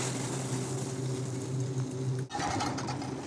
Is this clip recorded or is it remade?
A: recorded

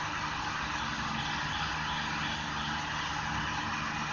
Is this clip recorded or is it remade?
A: recorded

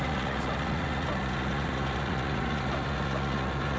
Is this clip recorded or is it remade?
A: remade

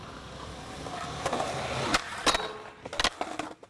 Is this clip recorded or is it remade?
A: recorded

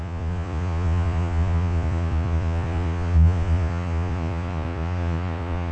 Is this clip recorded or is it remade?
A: remade